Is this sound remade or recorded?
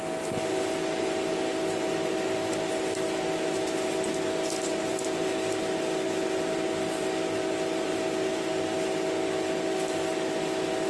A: recorded